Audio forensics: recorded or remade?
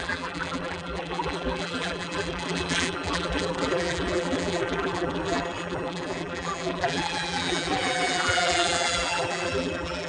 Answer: remade